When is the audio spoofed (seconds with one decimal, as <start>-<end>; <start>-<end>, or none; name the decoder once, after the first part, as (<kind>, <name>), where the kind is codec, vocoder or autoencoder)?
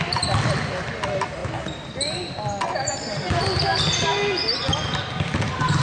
none